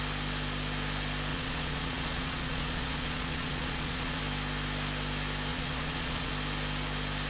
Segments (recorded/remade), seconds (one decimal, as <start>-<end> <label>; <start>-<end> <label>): 0.0-1.3 recorded; 1.3-4.2 remade; 4.2-5.5 recorded; 5.5-6.3 remade; 6.3-7.3 recorded